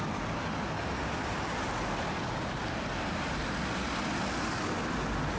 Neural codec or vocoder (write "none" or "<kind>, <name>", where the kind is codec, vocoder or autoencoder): none